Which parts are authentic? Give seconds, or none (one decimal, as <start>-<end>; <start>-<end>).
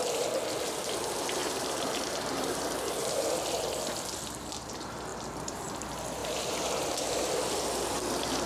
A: 0.0-1.4; 2.6-5.1; 5.6-6.2; 7.3-8.5